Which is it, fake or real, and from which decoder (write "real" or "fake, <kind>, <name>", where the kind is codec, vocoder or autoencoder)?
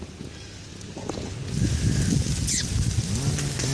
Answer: real